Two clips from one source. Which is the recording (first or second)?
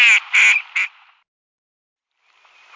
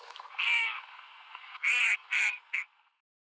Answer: first